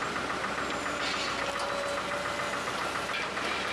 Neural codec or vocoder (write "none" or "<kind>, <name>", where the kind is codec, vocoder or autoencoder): none